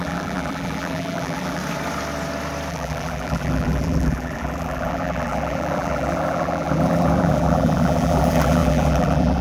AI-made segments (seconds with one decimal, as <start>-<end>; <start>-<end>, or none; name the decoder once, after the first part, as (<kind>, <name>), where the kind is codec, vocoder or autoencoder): 0.0-1.6 (vocoder, BigVGAN v2); 2.7-9.4